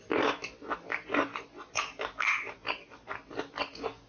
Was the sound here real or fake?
real